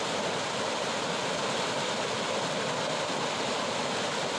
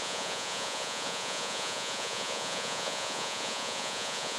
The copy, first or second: second